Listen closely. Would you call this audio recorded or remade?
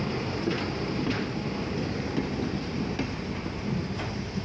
recorded